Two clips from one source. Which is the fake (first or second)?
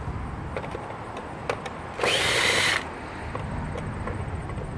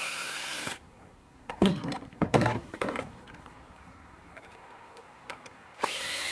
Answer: second